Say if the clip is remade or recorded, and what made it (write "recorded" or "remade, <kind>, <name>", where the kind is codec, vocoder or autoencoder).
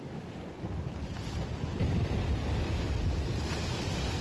recorded